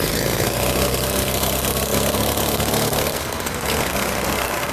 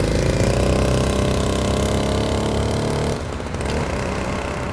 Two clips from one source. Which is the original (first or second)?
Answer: second